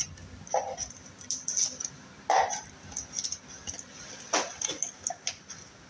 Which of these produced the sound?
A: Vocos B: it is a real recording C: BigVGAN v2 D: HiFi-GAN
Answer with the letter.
B